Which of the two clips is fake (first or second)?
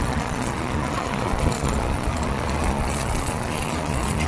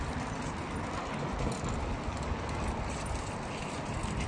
first